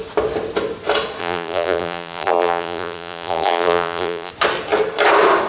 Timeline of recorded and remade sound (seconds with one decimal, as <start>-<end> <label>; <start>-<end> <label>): 0.0-1.2 recorded; 1.2-4.3 remade; 4.3-5.5 recorded